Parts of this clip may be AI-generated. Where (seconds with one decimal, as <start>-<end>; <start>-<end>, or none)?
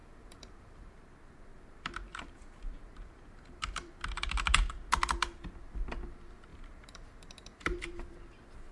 0.0-0.8; 2.1-4.0; 6.5-7.8